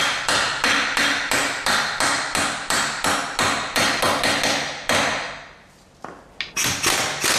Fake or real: real